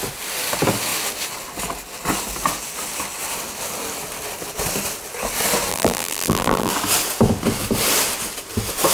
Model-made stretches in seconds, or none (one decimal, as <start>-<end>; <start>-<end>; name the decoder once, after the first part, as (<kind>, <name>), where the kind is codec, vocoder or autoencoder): 5.7-6.7 (vocoder, BigVGAN v2)